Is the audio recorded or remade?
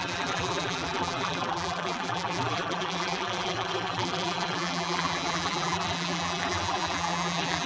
remade